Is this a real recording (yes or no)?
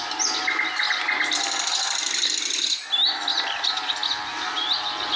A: yes